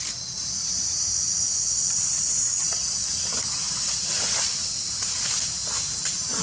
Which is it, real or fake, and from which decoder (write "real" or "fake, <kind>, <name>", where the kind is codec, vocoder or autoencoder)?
real